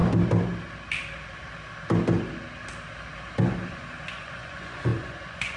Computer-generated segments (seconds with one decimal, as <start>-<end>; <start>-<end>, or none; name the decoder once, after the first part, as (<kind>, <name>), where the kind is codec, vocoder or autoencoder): 3.4-5.6 (vocoder, Vocos)